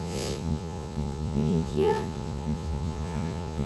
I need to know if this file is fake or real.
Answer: fake